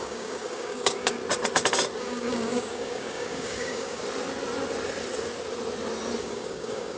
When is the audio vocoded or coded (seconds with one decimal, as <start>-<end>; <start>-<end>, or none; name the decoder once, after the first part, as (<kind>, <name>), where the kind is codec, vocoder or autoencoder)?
0.0-1.2 (codec, DAC); 2.0-4.0; 6.2-7.0